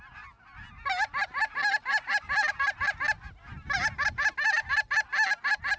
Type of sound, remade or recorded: recorded